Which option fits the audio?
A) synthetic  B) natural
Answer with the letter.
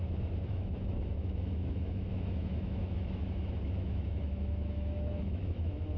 A